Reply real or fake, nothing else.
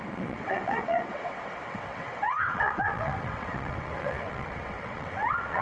fake